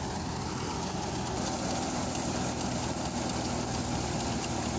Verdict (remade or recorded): recorded